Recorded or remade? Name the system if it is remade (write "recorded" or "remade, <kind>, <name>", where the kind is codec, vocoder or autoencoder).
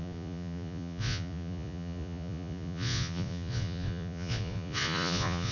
remade, vocoder, Vocos